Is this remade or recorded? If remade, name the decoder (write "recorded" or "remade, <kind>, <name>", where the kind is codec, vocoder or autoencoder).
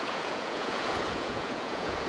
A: remade, vocoder, Vocos